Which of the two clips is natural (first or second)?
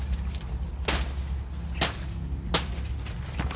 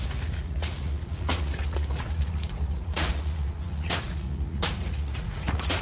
first